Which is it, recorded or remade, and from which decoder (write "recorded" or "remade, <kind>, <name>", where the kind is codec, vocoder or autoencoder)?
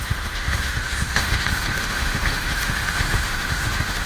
remade, autoencoder, DAC-VAE